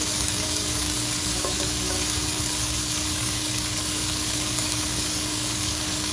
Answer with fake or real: fake